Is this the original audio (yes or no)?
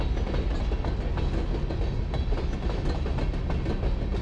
yes